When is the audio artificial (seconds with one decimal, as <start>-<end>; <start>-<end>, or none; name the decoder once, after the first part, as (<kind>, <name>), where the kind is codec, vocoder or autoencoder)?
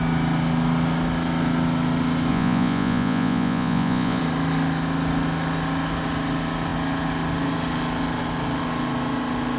2.3-4.2 (vocoder, Vocos)